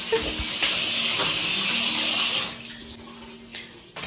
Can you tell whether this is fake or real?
real